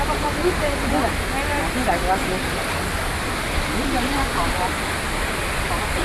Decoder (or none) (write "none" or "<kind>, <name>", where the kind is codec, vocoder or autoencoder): none